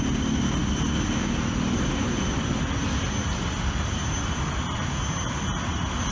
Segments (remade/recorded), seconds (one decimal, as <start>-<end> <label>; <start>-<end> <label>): 0.0-6.1 recorded